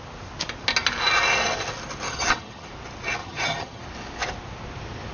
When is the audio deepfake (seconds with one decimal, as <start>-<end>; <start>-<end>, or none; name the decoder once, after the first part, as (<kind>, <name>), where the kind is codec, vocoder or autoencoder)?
2.1-2.7 (vocoder, HiFi-GAN); 3.2-3.8

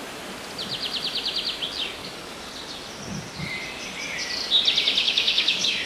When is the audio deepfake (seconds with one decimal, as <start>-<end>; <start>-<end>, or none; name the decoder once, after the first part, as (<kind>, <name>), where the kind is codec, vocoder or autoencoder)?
2.0-2.5 (codec, DAC); 5.0-5.9

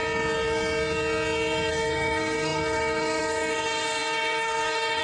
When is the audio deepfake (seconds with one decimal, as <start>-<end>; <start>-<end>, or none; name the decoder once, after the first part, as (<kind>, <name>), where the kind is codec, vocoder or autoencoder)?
1.7-5.0 (codec, SNAC)

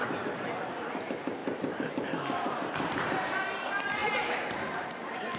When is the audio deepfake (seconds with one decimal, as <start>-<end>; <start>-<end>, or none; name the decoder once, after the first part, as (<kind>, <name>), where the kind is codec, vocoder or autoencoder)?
1.4-3.3 (vocoder, BigVGAN v2); 4.0-5.4